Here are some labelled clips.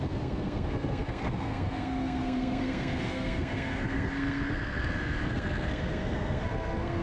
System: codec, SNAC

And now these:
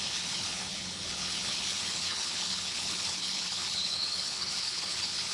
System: codec, HILCodec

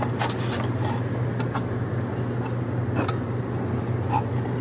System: none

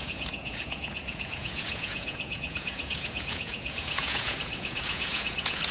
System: vocoder, Vocos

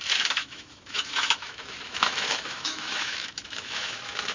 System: autoencoder, DAC-VAE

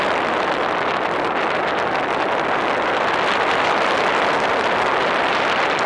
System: none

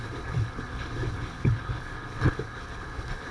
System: codec, HILCodec